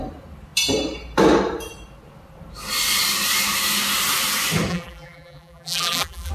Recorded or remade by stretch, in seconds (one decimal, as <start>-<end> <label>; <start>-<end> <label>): 0.0-4.7 recorded; 4.7-6.3 remade